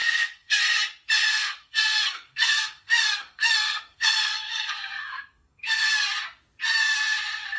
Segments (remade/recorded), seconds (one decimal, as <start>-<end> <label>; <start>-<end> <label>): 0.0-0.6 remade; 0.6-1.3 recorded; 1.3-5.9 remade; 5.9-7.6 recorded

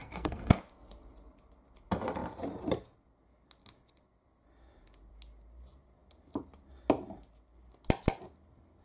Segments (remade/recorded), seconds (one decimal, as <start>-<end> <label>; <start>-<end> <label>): 0.0-0.6 remade; 0.6-8.8 recorded

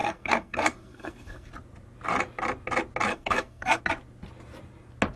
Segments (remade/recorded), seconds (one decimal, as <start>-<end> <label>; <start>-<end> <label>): 0.0-1.5 remade; 1.5-3.1 recorded; 3.1-3.8 remade; 3.8-5.2 recorded

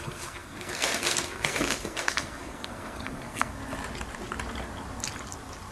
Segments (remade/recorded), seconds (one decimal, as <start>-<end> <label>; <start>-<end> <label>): 0.0-3.6 remade; 3.6-5.7 recorded

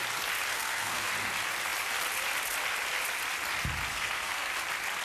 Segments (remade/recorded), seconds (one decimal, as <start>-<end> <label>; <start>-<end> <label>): 0.0-0.5 recorded; 0.5-1.1 remade; 1.1-3.9 recorded; 3.9-4.5 remade; 4.5-5.0 recorded

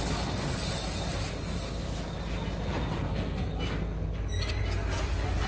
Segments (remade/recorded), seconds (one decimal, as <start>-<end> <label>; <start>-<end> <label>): 0.0-2.9 recorded; 2.9-3.5 remade; 3.5-5.5 recorded

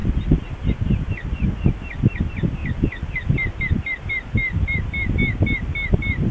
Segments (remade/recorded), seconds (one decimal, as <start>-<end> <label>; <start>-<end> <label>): 0.0-6.3 recorded